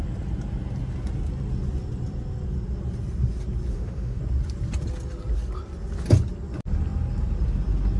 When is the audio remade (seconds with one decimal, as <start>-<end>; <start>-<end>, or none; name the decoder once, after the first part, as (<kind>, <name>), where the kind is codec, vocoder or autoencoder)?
3.7-4.2 (autoencoder, DAC-VAE)